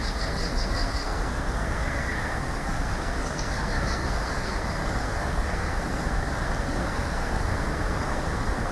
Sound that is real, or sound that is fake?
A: fake